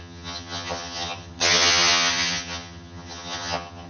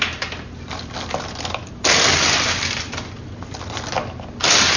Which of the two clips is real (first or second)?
second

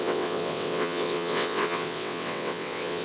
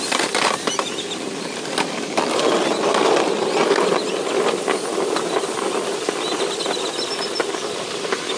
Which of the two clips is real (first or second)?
second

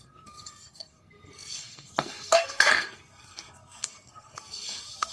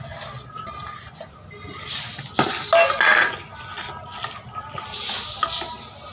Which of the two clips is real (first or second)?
second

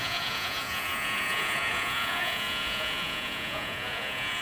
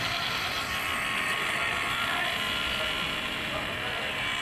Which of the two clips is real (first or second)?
second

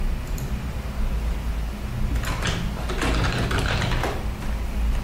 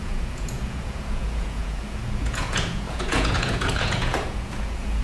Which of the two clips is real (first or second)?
first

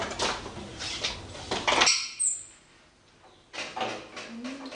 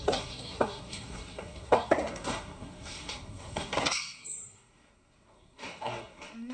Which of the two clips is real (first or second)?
first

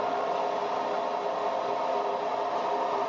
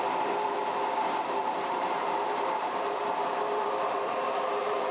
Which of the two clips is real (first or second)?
first